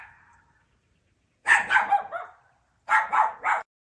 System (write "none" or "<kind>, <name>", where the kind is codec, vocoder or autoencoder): none